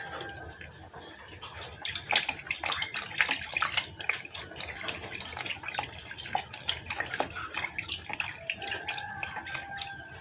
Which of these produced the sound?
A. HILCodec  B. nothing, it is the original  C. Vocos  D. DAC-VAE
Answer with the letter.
B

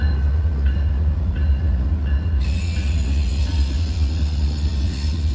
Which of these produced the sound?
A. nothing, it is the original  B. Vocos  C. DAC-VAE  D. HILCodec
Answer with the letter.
B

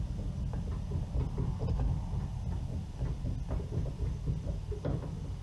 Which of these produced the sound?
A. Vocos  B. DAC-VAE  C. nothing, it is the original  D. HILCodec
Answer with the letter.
C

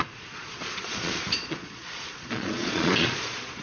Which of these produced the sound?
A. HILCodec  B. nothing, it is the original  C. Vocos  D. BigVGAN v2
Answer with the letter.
C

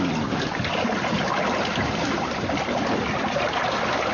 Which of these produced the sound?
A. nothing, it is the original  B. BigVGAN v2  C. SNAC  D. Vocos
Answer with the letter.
A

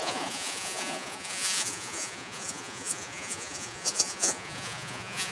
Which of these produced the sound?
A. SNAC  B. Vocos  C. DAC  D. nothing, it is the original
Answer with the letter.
B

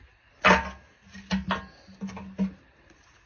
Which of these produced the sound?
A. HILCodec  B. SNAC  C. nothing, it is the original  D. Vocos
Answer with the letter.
C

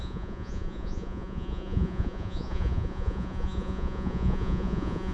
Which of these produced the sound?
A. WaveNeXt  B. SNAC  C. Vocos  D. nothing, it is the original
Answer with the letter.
C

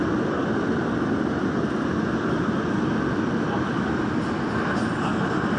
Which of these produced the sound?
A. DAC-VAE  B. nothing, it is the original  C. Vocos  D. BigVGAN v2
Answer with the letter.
B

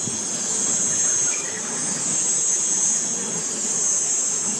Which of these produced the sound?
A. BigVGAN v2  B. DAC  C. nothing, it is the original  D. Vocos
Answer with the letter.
C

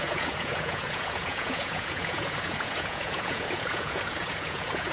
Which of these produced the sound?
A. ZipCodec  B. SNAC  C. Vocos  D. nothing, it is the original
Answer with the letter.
C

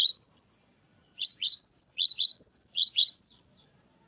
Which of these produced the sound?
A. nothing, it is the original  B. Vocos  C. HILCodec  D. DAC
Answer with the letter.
B